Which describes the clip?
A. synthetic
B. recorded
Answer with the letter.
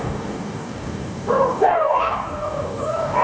A